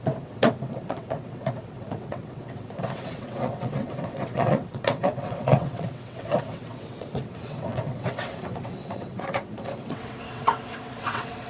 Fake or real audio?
fake